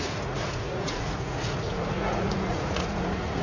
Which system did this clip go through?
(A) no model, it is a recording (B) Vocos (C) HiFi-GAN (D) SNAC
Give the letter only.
B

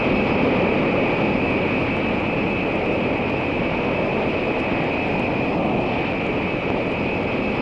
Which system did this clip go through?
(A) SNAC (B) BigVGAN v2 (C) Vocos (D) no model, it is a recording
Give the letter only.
D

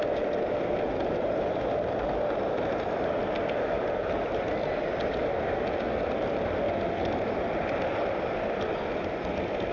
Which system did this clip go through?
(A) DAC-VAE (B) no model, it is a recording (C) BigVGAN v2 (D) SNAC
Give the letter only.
B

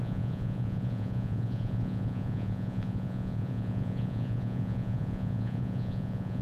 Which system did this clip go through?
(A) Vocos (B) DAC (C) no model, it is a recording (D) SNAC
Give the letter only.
A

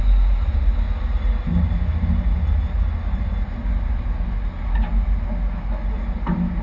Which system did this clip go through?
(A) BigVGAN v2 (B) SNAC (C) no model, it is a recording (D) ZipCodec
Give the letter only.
C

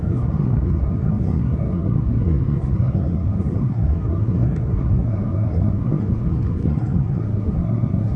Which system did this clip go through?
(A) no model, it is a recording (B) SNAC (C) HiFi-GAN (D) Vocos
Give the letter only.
B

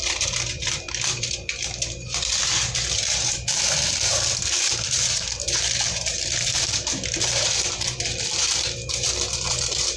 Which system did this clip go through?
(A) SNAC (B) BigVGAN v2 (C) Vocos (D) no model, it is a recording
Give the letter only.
B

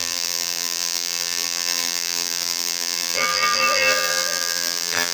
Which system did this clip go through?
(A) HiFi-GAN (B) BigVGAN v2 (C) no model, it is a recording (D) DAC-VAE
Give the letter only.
B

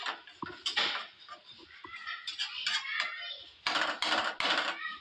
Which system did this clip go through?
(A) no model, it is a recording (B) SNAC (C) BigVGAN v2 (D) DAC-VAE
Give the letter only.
A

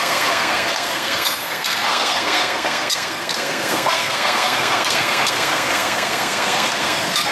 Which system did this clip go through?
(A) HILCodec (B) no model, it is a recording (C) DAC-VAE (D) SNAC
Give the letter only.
D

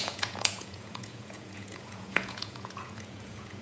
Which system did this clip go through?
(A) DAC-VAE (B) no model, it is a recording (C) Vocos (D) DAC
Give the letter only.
C